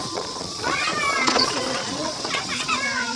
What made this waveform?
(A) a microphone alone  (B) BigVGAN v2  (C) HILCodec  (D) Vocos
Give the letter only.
D